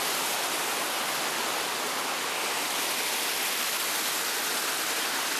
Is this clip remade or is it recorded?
recorded